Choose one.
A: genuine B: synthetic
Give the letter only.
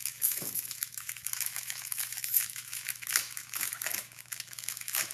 B